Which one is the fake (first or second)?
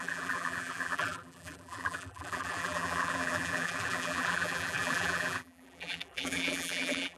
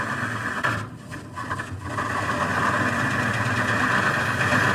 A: first